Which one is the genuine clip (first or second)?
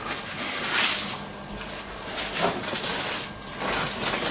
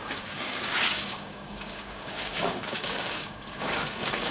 first